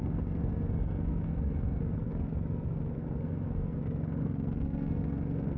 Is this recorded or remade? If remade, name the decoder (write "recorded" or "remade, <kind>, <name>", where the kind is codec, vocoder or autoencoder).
remade, codec, SNAC